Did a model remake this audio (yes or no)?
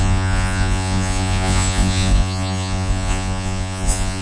yes